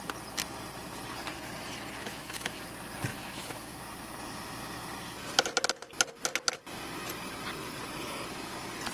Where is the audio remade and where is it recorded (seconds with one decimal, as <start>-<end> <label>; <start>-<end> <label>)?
0.0-2.0 recorded; 2.0-2.7 remade; 2.7-3.1 recorded; 3.1-3.8 remade; 3.8-8.9 recorded

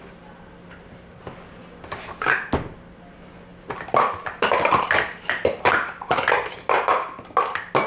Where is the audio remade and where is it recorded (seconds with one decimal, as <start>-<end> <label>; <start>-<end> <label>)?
0.0-7.9 recorded

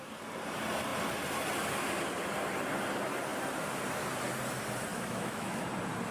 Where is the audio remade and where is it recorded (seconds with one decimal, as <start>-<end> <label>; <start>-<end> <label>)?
0.0-4.9 recorded; 4.9-5.6 remade; 5.6-6.1 recorded